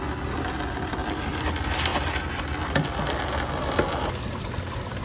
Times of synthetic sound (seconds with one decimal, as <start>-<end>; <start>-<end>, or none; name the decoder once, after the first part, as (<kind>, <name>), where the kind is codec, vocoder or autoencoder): none